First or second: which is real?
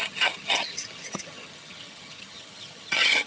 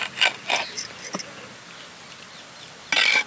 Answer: second